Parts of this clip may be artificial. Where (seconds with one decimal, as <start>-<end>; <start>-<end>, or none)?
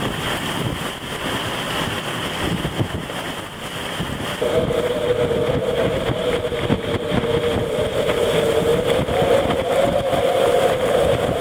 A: none